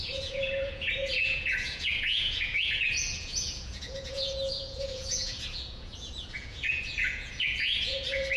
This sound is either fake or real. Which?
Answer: fake